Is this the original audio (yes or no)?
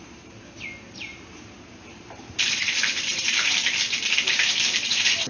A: no